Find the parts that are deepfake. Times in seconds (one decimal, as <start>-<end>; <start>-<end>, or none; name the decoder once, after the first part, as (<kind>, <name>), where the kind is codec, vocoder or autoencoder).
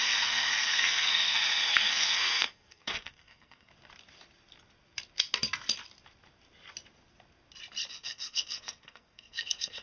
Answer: 0.0-3.7 (codec, SNAC); 7.9-9.8